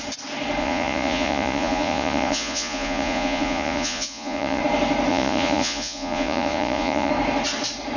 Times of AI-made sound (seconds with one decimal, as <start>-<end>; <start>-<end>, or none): 0.6-4.6; 5.1-7.1